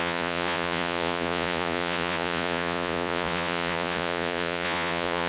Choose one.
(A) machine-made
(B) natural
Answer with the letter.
A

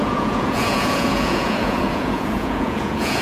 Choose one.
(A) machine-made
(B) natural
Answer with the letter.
A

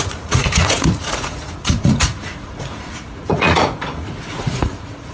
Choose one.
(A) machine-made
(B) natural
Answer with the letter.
A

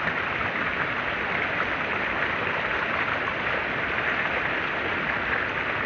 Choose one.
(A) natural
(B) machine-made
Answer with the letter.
A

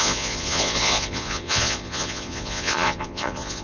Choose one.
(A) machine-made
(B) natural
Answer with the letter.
A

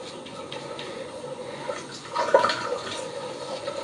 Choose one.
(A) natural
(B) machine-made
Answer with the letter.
B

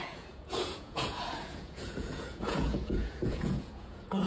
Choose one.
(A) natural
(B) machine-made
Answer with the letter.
B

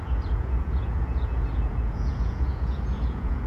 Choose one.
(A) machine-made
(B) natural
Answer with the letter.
A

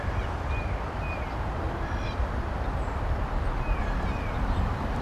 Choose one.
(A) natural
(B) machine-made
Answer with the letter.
A